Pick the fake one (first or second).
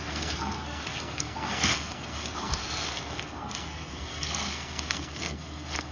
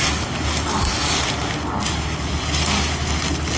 first